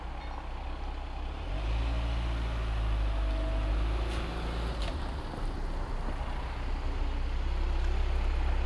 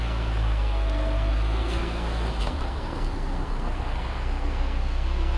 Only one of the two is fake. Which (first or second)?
second